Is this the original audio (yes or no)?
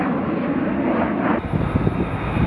yes